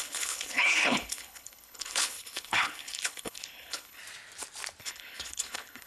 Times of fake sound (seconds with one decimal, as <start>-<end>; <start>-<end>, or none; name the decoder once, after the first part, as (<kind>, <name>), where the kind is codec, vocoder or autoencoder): 0.0-4.0 (codec, HILCodec); 4.8-5.9